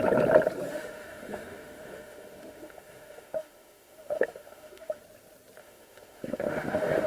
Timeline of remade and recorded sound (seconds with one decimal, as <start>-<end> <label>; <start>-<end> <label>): 0.0-0.7 recorded; 0.7-5.0 remade; 5.0-5.6 recorded; 5.6-7.1 remade